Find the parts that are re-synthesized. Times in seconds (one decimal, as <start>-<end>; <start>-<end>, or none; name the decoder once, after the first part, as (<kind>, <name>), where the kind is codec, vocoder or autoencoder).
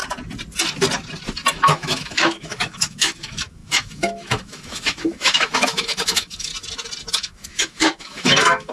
1.5-6.5 (autoencoder, DAC-VAE); 7.1-8.7